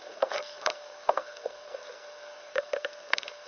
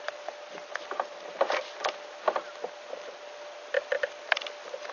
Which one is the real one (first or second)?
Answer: second